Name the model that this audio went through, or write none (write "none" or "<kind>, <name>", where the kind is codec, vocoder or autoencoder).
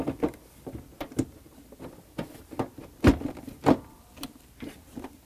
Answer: none